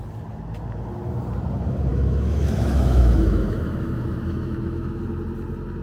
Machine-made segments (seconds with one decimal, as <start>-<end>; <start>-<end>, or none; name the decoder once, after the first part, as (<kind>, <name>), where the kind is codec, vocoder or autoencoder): 1.9-5.0 (autoencoder, DAC-VAE)